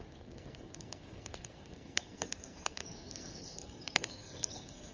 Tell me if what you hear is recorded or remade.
remade